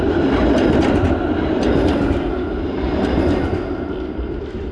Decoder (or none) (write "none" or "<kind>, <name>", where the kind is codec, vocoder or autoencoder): none